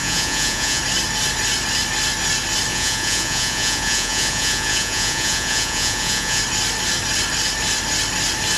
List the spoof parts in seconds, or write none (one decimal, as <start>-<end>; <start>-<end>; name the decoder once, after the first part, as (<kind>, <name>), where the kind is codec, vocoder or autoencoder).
0.0-0.8 (vocoder, Vocos); 2.7-6.4